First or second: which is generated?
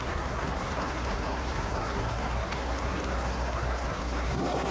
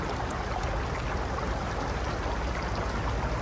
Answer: first